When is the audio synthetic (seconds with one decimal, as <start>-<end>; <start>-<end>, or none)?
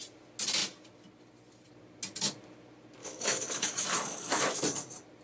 3.0-4.6